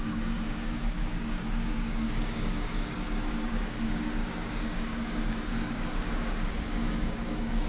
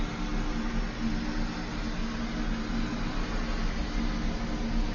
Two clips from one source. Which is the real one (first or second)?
second